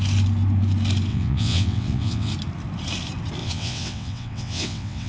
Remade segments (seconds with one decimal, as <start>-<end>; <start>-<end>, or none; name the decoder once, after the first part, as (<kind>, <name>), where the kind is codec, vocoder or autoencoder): 1.1-2.3 (vocoder, WaveNeXt); 3.4-5.1